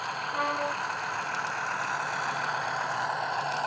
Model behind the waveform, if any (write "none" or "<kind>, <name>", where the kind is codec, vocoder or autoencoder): none